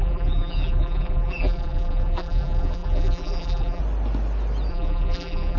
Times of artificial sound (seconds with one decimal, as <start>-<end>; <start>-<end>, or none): 0.0-3.8; 4.7-5.6